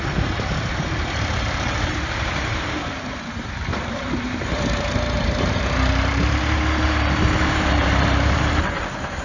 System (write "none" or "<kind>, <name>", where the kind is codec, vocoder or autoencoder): vocoder, BigVGAN v2